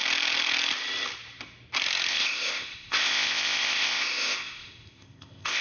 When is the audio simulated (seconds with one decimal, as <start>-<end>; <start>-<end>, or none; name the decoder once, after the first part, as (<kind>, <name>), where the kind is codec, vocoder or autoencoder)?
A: 2.1-5.6 (codec, ZipCodec)